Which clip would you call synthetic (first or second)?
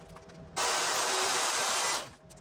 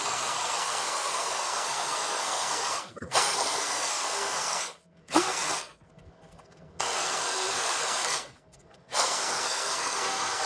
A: second